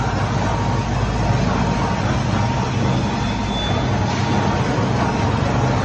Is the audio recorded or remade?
recorded